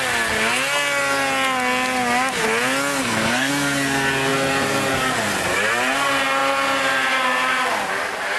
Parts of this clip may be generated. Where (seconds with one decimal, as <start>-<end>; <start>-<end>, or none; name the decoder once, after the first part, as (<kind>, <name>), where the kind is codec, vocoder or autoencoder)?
3.0-3.5 (codec, SNAC)